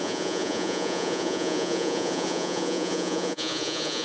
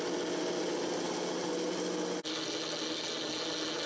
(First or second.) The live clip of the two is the second